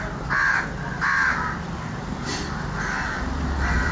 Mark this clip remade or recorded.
recorded